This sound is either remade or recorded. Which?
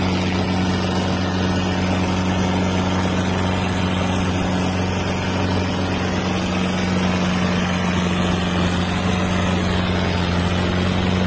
recorded